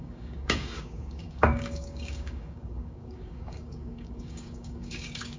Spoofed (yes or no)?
yes